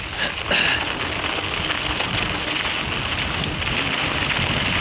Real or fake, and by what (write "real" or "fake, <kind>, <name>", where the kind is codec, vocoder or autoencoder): real